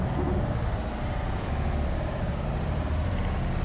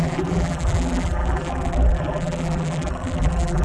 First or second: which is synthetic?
second